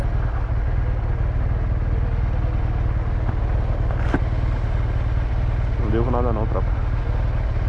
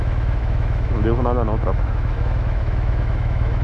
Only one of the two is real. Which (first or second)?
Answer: first